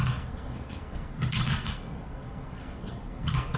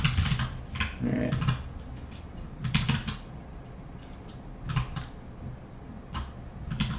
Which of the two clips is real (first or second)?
second